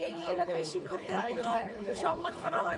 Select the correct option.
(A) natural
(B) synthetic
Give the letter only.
B